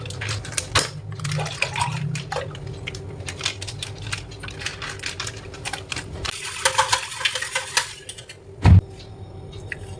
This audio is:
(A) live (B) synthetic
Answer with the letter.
A